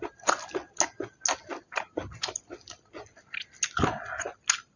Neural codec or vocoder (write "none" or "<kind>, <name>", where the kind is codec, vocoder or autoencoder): none